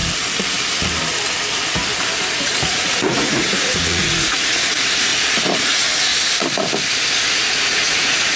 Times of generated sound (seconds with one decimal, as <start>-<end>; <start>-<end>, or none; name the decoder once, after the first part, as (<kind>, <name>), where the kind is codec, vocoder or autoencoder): 2.3-5.1 (vocoder, Vocos); 5.6-6.1; 7.3-8.4